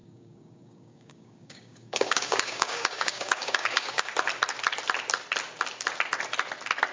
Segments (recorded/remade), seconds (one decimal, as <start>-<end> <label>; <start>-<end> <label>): 0.0-4.1 remade; 4.1-6.9 recorded